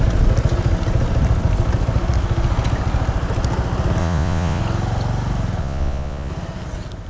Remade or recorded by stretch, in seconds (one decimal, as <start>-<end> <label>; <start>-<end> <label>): 0.0-4.0 recorded; 4.0-4.6 remade; 4.6-5.6 recorded; 5.6-6.3 remade; 6.3-7.1 recorded